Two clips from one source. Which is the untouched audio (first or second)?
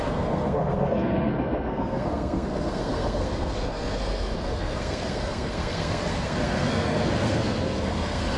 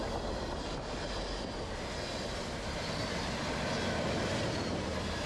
second